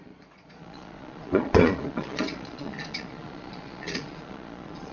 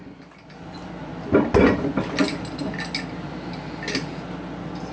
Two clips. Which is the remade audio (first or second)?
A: first